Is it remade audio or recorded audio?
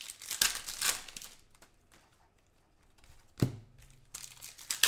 recorded